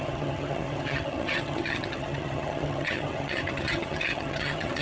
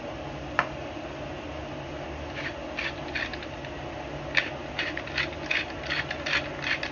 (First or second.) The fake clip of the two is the first